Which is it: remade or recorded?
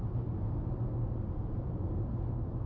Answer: recorded